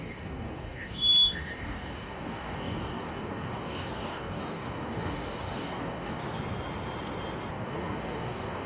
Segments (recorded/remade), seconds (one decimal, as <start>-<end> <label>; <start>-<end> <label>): 0.0-6.2 remade; 6.2-7.5 recorded; 7.5-8.7 remade